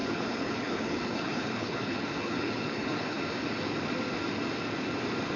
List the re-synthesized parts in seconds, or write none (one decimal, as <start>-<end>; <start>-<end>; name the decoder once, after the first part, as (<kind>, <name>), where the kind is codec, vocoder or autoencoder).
0.0-3.2 (codec, HILCodec)